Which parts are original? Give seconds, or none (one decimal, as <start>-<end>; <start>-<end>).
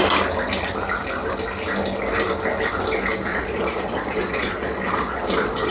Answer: 0.0-3.3